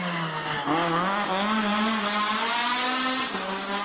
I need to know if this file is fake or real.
real